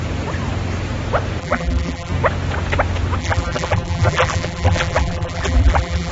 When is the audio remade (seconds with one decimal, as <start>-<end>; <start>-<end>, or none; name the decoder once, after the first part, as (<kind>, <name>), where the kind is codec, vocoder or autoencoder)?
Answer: 1.4-2.1 (vocoder, BigVGAN v2); 3.2-6.1